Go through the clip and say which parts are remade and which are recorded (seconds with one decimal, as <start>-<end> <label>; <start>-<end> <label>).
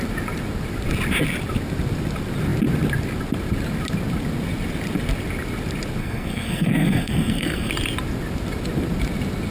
0.0-6.0 recorded; 6.0-7.7 remade; 7.7-9.5 recorded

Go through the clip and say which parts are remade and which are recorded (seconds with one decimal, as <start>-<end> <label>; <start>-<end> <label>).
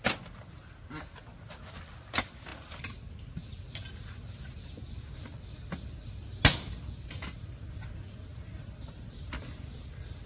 0.0-8.3 recorded; 8.3-9.9 remade; 9.9-10.3 recorded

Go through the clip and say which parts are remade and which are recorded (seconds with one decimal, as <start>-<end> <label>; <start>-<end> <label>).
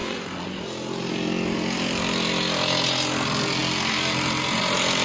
0.0-0.6 remade; 0.6-5.0 recorded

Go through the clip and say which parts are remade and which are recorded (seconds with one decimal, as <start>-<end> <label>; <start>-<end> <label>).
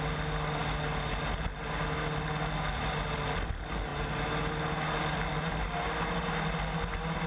0.0-7.3 recorded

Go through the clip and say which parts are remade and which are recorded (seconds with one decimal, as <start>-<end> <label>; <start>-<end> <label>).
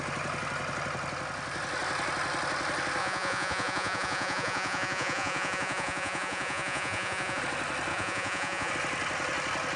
0.0-3.0 recorded; 3.0-7.4 remade; 7.4-7.9 recorded; 7.9-8.7 remade; 8.7-9.8 recorded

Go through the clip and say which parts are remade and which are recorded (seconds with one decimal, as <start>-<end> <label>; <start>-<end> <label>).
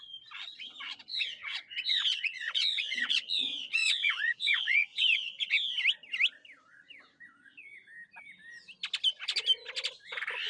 0.0-1.1 recorded; 1.1-5.5 remade; 5.5-10.5 recorded